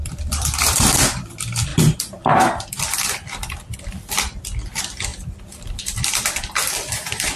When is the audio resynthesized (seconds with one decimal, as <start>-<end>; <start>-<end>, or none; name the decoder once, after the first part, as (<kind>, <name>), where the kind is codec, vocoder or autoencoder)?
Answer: 0.0-7.4 (vocoder, BigVGAN v2)